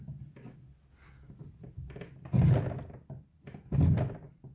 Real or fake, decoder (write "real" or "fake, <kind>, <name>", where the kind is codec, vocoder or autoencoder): real